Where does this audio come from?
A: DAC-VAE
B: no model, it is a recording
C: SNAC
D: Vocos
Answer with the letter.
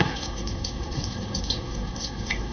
C